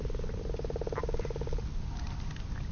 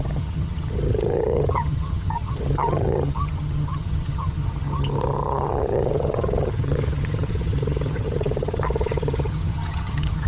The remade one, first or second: second